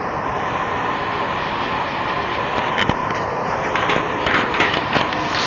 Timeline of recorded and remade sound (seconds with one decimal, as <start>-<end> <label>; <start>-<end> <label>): 0.0-3.0 recorded; 3.0-4.9 remade; 4.9-5.5 recorded